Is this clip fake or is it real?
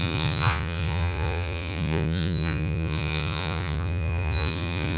fake